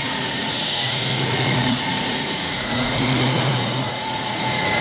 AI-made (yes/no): yes